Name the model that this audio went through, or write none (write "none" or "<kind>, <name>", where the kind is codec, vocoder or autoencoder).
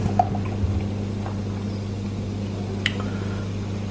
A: none